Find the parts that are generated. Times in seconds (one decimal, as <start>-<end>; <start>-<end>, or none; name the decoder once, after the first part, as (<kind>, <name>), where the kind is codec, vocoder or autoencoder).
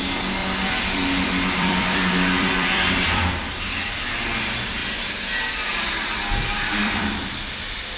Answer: 0.4-3.8 (vocoder, BigVGAN v2); 4.8-8.0